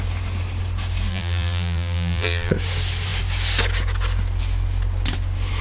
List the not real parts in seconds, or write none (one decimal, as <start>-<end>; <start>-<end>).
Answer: 1.1-2.5